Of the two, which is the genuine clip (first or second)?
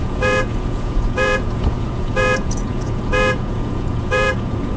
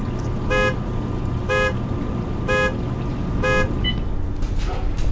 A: second